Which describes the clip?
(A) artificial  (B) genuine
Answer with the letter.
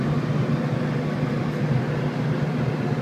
B